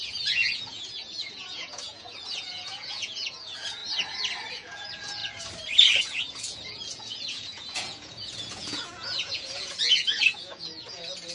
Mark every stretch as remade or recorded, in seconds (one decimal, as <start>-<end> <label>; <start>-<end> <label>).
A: 0.0-3.8 remade; 3.8-4.5 recorded; 4.5-5.2 remade; 5.2-6.0 recorded; 6.0-11.3 remade